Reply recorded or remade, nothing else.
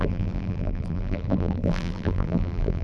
remade